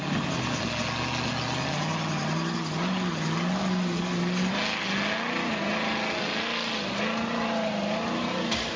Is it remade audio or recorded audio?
recorded